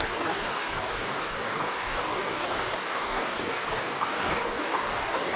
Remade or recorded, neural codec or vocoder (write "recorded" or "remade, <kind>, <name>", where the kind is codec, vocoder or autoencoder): remade, codec, DAC